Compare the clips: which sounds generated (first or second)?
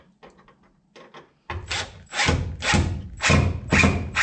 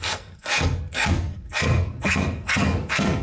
second